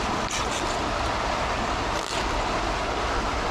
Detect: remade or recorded recorded